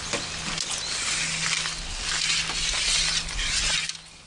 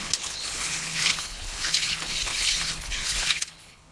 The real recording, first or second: first